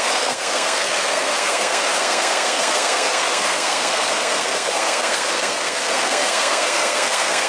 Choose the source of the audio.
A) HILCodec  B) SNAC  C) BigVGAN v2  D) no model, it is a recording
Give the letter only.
B